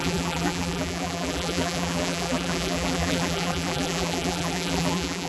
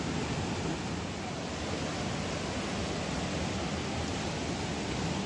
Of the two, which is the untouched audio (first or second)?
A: second